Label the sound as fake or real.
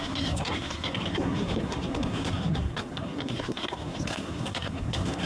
fake